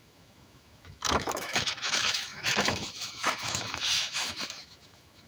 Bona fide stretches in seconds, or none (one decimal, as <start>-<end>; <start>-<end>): none